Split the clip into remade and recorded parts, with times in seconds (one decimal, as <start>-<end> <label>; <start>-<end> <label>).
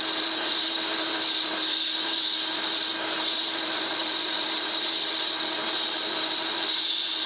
0.0-7.3 remade